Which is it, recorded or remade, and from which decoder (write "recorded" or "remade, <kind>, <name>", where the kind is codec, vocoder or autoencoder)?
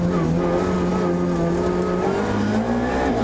recorded